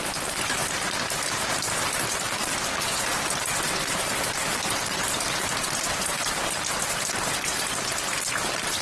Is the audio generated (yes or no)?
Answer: no